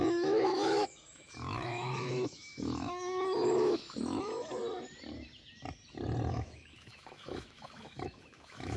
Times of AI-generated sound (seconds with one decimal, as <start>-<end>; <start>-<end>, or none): 0.0-4.6; 6.3-8.8